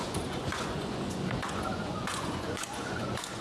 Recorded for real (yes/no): no